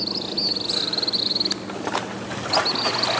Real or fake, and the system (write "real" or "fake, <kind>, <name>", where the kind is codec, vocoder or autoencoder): real